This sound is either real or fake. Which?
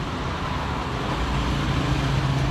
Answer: real